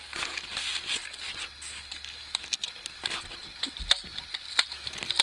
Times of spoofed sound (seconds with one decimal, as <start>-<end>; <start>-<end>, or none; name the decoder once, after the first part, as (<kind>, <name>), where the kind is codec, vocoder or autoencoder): none

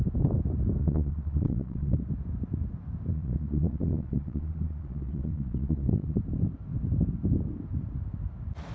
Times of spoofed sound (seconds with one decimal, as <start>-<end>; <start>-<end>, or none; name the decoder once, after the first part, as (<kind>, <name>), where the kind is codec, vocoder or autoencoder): 0.8-2.0 (vocoder, Vocos); 3.1-6.2

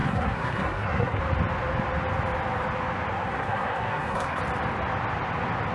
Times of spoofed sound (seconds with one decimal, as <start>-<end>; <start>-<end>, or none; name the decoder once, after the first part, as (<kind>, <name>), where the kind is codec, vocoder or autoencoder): 0.0-1.2 (codec, SNAC); 3.1-4.4